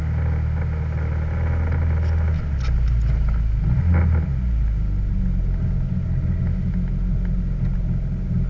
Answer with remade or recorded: recorded